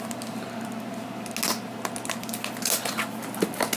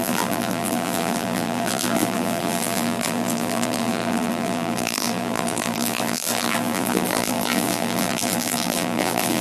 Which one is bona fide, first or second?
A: first